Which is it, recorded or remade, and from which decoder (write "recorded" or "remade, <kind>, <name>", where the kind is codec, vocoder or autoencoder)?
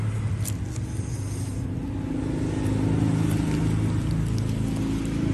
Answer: recorded